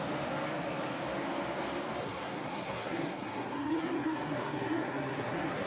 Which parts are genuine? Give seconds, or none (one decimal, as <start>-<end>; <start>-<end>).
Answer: 0.0-2.0